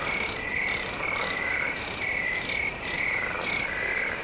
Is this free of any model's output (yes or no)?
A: yes